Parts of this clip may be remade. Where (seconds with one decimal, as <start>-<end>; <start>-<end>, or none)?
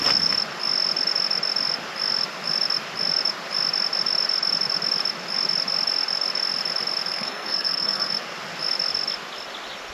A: 7.1-8.1